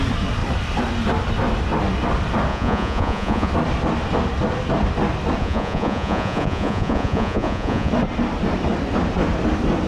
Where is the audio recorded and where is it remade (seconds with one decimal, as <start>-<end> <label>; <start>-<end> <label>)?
0.0-2.5 recorded; 2.5-3.5 remade; 3.5-5.4 recorded; 5.4-7.9 remade; 7.9-9.9 recorded

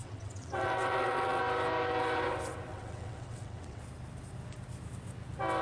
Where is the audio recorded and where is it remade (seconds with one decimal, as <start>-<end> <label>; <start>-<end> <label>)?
0.0-1.4 remade; 1.4-2.7 recorded; 2.7-3.8 remade; 3.8-5.6 recorded

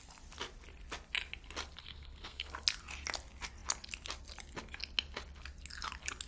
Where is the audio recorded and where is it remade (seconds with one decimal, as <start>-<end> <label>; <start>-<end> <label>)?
0.0-1.8 recorded; 1.8-2.5 remade; 2.5-6.3 recorded